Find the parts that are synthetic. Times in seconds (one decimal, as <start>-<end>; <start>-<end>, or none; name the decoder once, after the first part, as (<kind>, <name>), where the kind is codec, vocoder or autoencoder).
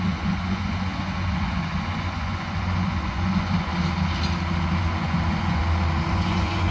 0.0-3.7 (vocoder, Vocos); 4.8-5.6; 6.1-6.7